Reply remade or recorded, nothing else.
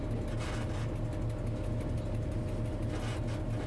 recorded